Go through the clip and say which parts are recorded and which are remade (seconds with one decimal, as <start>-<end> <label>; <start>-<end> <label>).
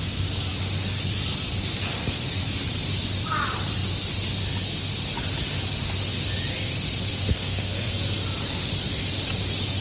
0.0-7.3 recorded; 7.3-7.9 remade; 7.9-9.8 recorded